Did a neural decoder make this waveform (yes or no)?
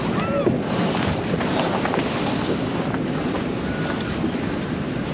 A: no